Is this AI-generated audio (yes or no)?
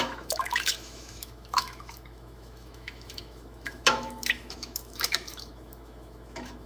yes